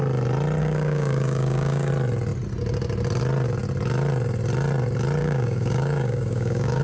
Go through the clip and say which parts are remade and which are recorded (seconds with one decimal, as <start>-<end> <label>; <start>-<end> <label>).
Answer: 0.0-0.6 recorded; 0.6-1.9 remade; 1.9-5.2 recorded; 5.2-6.8 remade